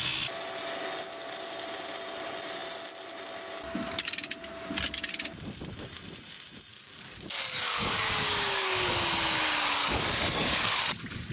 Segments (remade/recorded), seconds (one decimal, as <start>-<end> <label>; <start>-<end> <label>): 0.0-6.7 recorded; 6.7-8.9 remade; 8.9-9.8 recorded; 9.8-10.7 remade; 10.7-11.3 recorded